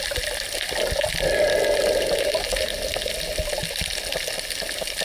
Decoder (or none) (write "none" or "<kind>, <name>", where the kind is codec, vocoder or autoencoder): none